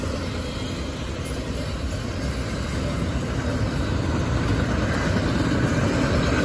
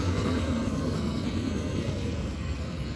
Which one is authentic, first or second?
first